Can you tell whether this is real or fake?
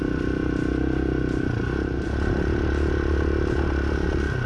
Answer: real